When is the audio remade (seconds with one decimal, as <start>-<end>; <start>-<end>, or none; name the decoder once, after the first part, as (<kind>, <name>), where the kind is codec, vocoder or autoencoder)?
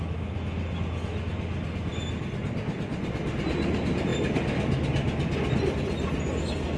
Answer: none